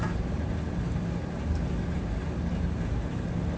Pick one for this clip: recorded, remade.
recorded